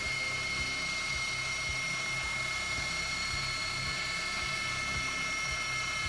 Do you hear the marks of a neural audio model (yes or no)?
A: yes